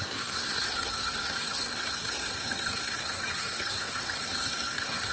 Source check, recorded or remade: remade